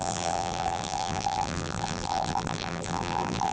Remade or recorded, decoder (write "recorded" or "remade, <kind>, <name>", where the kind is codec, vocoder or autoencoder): remade, vocoder, BigVGAN v2